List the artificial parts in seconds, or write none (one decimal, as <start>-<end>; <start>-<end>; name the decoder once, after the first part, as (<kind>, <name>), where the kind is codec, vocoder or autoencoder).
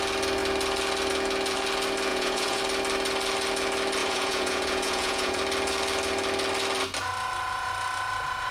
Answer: 2.1-2.6 (vocoder, Vocos); 4.0-5.4